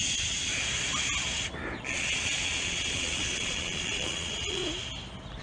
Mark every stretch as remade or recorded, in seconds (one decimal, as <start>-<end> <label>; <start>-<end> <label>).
0.0-0.5 remade; 0.5-1.8 recorded; 1.8-4.6 remade; 4.6-5.4 recorded